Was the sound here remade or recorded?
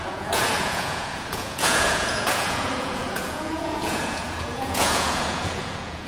remade